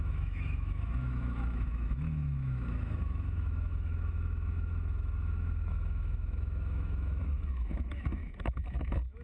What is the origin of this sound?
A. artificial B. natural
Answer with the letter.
A